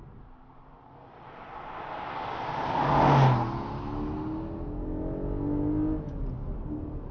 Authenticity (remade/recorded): recorded